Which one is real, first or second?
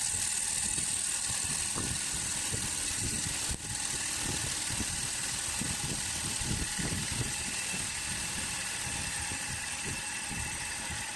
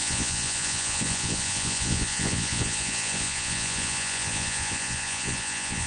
first